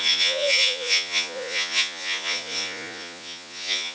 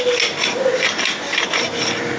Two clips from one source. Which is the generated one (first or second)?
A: first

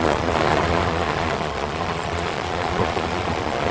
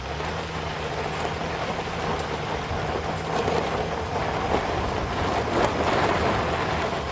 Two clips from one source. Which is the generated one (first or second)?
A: first